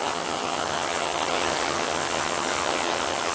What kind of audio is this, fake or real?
fake